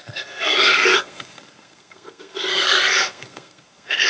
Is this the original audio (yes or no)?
no